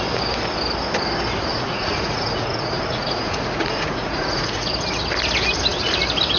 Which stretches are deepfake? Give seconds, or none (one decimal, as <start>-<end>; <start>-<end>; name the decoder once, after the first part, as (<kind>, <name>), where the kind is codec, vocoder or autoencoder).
1.5-4.7 (vocoder, Vocos)